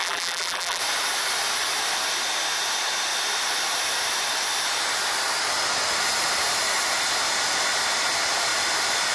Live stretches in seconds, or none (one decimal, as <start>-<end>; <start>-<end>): 0.8-9.1